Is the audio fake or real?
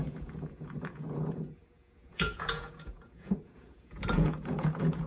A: fake